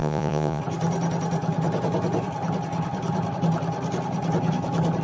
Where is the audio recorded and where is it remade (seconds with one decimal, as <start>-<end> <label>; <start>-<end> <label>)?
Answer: 0.0-0.6 remade; 0.6-5.0 recorded